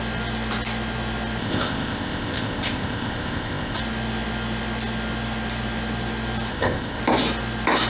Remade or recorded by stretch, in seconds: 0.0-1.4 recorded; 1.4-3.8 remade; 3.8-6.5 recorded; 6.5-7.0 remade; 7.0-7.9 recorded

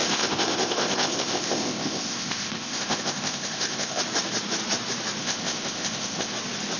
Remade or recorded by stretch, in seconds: 0.0-4.0 remade; 4.0-5.2 recorded; 5.2-6.3 remade; 6.3-6.8 recorded

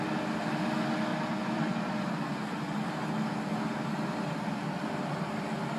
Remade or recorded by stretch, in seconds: 0.0-5.8 recorded